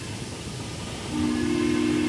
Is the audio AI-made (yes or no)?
no